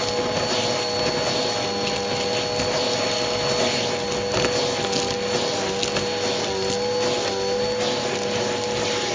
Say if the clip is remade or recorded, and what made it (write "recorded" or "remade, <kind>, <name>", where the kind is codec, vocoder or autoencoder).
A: recorded